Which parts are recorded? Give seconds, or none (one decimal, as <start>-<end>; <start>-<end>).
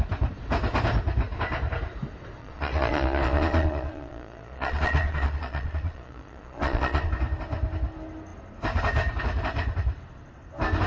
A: 0.0-2.4; 7.1-10.9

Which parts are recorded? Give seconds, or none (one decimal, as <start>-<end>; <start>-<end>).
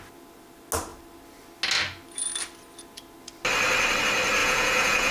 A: 0.0-4.4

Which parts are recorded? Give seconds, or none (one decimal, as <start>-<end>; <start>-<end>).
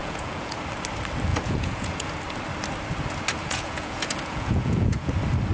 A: 0.6-1.3; 2.1-3.4; 5.1-5.5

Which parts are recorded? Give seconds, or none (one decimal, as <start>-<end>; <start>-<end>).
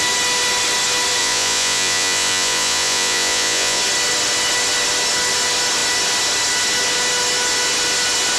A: 0.0-1.2; 3.8-8.4